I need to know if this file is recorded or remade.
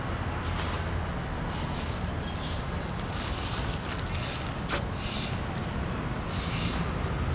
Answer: recorded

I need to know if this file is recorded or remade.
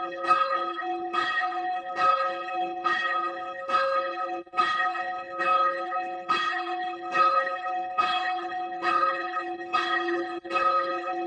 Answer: remade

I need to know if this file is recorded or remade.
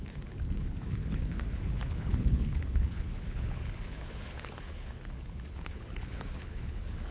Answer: remade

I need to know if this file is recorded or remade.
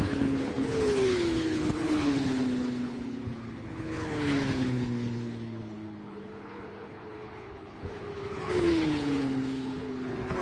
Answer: remade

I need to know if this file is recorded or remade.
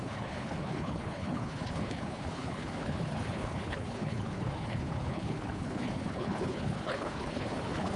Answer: remade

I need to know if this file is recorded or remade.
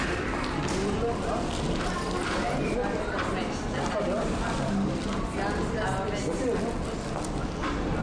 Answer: recorded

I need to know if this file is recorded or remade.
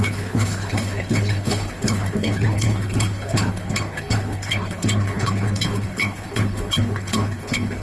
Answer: remade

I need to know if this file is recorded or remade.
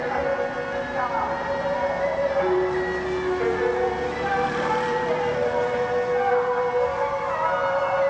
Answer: recorded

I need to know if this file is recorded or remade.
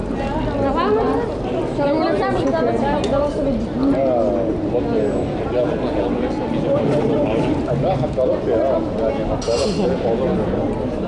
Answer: recorded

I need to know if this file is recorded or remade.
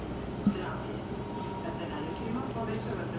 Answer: recorded